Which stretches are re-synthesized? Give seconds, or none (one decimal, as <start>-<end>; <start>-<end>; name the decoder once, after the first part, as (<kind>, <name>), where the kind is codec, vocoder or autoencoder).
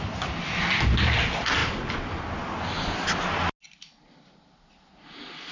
none